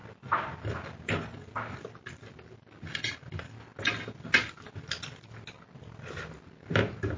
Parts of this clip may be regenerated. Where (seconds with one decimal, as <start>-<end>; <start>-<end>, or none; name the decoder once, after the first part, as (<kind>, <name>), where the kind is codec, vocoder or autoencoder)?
none